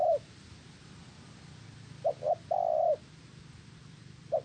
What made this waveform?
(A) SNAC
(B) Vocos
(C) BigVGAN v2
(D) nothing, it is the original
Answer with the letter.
D